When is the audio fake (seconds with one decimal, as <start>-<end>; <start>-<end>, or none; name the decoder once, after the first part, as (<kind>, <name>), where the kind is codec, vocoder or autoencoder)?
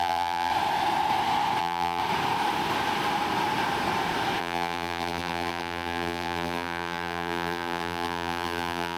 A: 0.0-0.5 (vocoder, BigVGAN v2); 1.6-2.0; 4.4-9.0